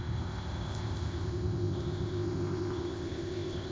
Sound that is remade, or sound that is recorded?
remade